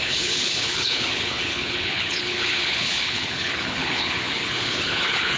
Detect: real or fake fake